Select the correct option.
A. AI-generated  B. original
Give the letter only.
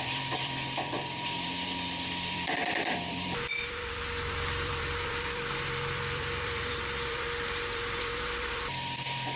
A